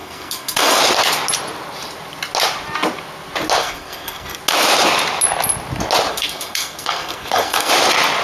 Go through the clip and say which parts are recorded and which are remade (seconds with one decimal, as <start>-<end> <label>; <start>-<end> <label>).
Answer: 0.0-0.8 remade; 0.8-3.6 recorded; 3.6-4.4 remade; 4.4-6.1 recorded; 6.1-7.7 remade; 7.7-8.2 recorded

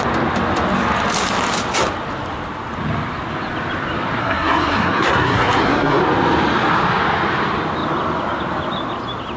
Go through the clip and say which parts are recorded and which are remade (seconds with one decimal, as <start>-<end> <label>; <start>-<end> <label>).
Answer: 0.0-4.2 recorded; 4.2-6.0 remade; 6.0-9.4 recorded

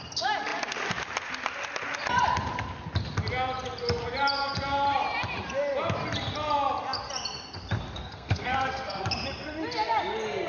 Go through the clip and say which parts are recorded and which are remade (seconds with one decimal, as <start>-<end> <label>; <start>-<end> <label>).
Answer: 0.0-8.0 recorded; 8.0-9.0 remade; 9.0-10.5 recorded

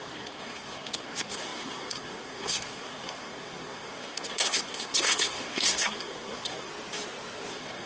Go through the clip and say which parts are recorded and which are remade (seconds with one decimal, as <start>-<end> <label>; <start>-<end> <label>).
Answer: 0.0-6.7 remade; 6.7-7.5 recorded; 7.5-7.9 remade

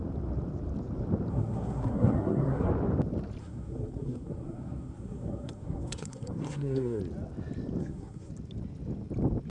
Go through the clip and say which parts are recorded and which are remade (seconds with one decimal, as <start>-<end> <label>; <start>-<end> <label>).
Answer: 0.0-1.3 recorded; 1.3-2.7 remade; 2.7-3.4 recorded; 3.4-7.0 remade; 7.0-7.8 recorded; 7.8-8.3 remade; 8.3-9.5 recorded